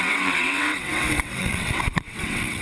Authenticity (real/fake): fake